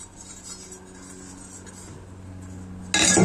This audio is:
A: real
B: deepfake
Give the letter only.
A